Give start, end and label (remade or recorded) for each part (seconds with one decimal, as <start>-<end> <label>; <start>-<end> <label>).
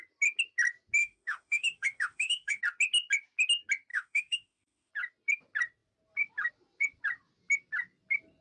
0.0-1.0 recorded; 1.0-2.6 remade; 2.6-3.9 recorded; 3.9-4.9 remade; 4.9-8.4 recorded